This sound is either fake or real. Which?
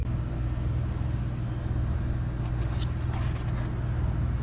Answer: real